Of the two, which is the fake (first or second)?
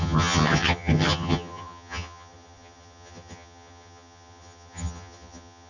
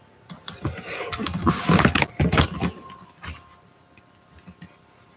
first